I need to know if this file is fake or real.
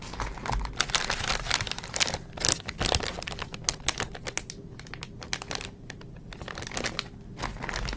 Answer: real